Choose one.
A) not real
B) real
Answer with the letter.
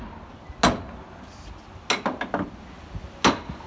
B